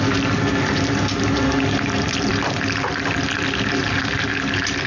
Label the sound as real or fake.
real